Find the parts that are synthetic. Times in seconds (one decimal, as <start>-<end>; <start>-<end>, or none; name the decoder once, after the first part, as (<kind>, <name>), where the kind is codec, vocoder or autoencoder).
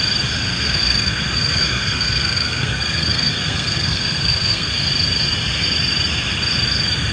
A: 0.4-4.7 (codec, SNAC)